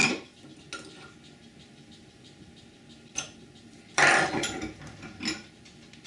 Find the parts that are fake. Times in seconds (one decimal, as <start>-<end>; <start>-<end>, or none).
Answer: 0.0-0.6; 1.5-5.2